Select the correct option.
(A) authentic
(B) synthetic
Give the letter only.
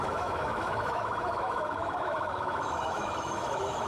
B